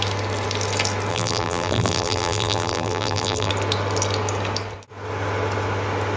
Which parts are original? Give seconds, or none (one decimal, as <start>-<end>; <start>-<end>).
0.0-1.1; 3.5-6.2

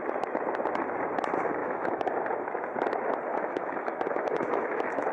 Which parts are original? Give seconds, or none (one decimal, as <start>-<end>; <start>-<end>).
0.0-1.6; 2.1-3.3

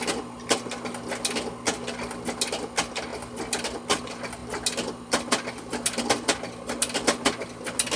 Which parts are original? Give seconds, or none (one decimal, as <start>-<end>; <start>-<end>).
0.0-8.0

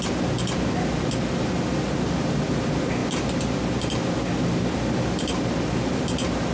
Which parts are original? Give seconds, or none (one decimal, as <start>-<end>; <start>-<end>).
0.0-6.5

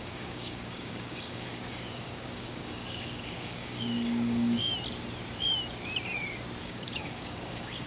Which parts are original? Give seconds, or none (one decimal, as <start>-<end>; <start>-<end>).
4.7-6.6

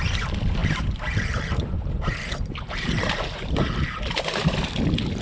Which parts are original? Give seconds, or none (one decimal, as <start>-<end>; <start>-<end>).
0.0-0.6; 3.7-5.2

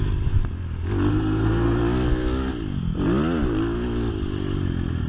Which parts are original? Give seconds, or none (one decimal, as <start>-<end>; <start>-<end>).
0.0-1.1; 1.8-5.1